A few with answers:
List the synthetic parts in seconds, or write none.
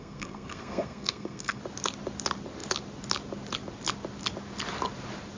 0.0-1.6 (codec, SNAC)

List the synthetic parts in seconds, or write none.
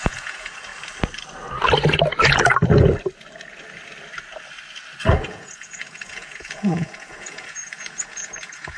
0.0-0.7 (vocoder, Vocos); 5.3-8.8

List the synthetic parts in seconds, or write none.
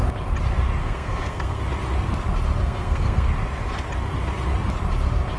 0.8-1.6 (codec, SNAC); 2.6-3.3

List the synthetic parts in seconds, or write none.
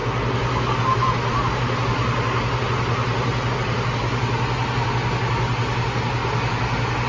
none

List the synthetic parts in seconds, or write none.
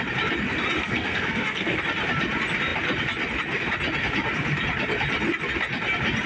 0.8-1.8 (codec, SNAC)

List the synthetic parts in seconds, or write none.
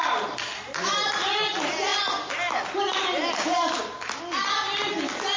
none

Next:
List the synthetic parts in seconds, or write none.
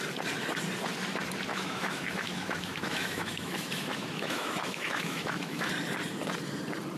1.5-5.7 (autoencoder, DAC-VAE)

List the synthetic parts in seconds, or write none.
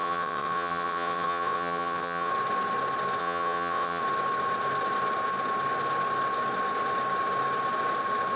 0.0-2.3 (vocoder, WaveNeXt); 3.2-4.0